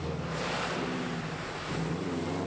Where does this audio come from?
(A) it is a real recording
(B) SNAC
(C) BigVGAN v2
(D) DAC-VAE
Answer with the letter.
A